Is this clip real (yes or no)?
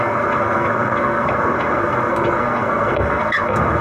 no